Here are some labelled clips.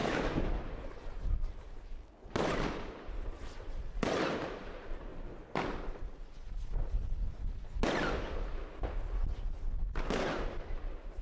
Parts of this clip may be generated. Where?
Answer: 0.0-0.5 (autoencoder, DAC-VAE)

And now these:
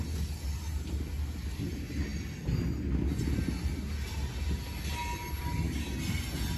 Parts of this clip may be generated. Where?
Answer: none

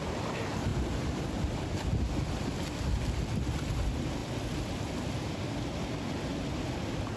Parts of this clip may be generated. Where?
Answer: none